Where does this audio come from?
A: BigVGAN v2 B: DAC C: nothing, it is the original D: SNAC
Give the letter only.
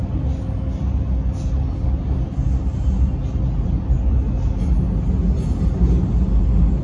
C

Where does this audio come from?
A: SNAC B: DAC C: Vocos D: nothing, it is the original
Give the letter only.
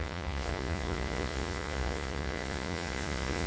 C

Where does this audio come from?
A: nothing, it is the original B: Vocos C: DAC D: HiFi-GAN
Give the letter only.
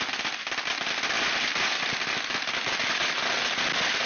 A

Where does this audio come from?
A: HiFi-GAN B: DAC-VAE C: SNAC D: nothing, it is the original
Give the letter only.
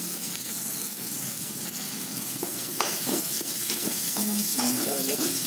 C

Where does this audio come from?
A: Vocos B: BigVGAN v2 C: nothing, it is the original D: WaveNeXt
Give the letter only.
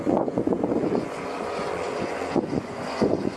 A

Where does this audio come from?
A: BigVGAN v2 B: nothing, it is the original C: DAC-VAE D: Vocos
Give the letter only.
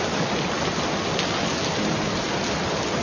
B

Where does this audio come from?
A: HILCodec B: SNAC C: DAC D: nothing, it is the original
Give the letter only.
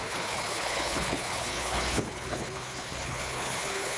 A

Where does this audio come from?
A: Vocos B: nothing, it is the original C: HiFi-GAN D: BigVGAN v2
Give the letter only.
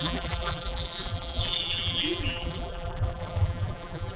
D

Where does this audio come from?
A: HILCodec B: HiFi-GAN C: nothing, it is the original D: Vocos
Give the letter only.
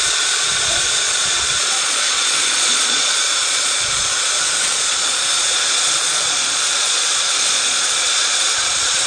D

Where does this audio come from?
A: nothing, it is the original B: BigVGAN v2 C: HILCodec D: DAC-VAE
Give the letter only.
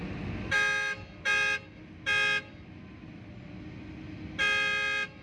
A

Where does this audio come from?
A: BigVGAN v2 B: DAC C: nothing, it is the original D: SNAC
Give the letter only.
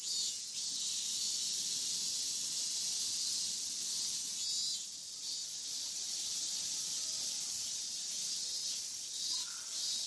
C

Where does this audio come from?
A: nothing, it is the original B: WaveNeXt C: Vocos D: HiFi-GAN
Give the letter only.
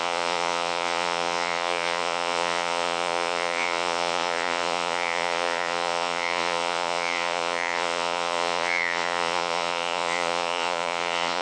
C